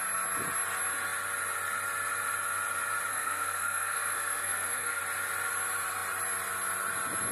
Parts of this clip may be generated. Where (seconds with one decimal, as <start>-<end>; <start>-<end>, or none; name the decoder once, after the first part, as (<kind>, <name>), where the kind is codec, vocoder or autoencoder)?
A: 3.1-5.0 (codec, SNAC)